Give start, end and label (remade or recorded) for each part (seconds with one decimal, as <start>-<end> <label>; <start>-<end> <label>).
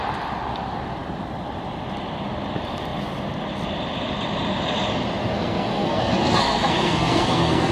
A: 0.0-5.3 recorded; 5.3-7.7 remade